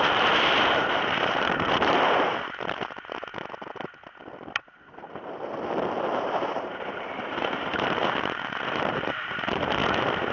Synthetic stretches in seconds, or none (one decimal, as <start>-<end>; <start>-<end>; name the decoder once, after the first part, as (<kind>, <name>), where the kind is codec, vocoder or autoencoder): 0.0-3.3 (vocoder, BigVGAN v2); 6.0-9.8